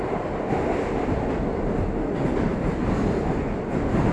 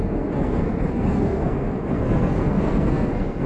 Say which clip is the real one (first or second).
first